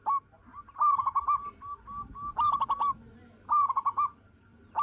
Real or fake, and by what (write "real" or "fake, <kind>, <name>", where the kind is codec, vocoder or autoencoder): real